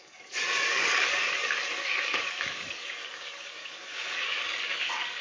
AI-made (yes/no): yes